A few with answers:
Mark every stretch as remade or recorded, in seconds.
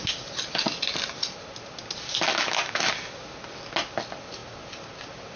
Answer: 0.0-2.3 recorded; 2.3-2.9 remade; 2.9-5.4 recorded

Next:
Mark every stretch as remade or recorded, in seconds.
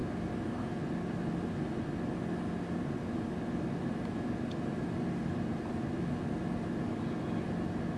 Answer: 0.0-8.0 recorded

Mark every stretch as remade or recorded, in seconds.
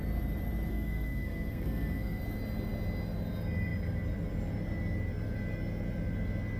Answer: 0.0-0.7 recorded; 0.7-2.2 remade; 2.2-6.6 recorded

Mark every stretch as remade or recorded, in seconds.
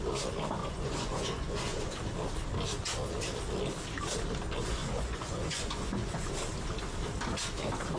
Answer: 0.0-0.6 recorded; 0.6-2.0 remade; 2.0-4.8 recorded; 4.8-6.3 remade; 6.3-8.0 recorded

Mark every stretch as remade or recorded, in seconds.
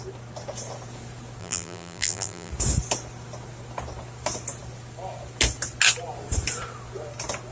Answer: 0.0-1.4 recorded; 1.4-2.5 remade; 2.5-7.5 recorded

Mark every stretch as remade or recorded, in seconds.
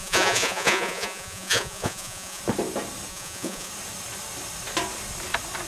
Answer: 0.0-2.4 remade; 2.4-3.1 recorded; 3.1-3.7 remade; 3.7-5.7 recorded